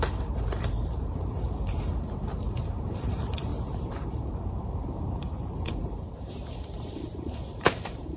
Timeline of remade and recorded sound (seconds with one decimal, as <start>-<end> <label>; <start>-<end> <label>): 0.0-8.2 remade